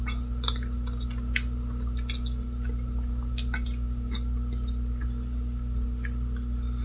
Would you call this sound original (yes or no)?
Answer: yes